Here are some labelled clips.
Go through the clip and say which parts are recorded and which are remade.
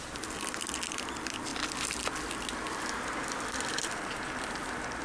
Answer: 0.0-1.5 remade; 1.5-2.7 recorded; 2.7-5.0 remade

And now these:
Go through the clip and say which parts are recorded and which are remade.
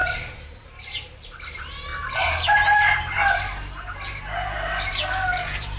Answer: 0.0-5.8 remade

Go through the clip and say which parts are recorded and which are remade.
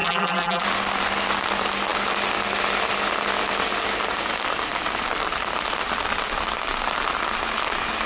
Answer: 0.0-0.6 remade; 0.6-8.1 recorded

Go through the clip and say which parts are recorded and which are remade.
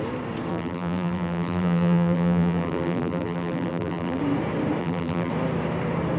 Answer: 0.0-0.5 recorded; 0.5-4.2 remade; 4.2-4.8 recorded; 4.8-5.3 remade; 5.3-6.2 recorded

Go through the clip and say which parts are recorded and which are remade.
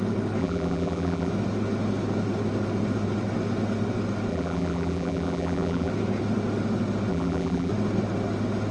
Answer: 0.0-0.4 recorded; 0.4-1.3 remade; 1.3-4.3 recorded; 4.3-5.9 remade; 5.9-7.1 recorded; 7.1-7.7 remade; 7.7-8.7 recorded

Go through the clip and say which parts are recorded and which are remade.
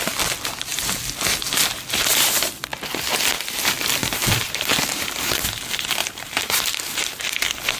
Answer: 0.0-4.0 recorded; 4.0-5.4 remade; 5.4-6.0 recorded; 6.0-6.8 remade; 6.8-7.8 recorded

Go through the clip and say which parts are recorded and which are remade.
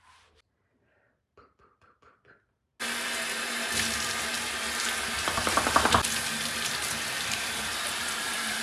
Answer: 0.0-2.7 remade; 2.7-7.1 recorded; 7.1-8.6 remade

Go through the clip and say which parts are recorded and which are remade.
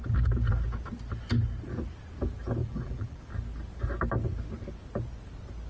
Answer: 0.0-2.6 recorded; 2.6-3.2 remade; 3.2-5.7 recorded